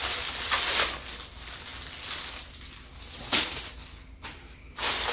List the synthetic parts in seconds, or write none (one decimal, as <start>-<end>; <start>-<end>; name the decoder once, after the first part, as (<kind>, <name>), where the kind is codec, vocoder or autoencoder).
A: none